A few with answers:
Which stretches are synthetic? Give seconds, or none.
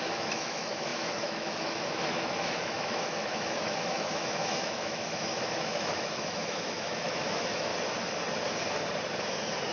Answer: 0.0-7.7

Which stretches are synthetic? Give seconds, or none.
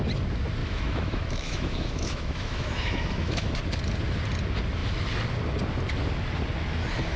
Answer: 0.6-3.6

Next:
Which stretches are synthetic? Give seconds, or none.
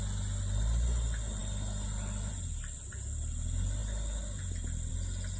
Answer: none